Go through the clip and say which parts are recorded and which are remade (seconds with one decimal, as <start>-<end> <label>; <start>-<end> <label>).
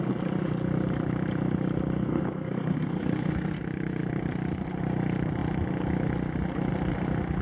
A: 0.0-2.0 recorded; 2.0-3.6 remade; 3.6-7.4 recorded